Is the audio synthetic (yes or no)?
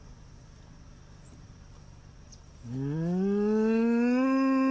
no